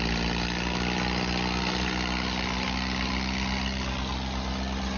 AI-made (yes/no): no